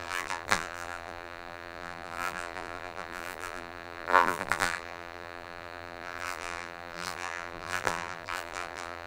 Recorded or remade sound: remade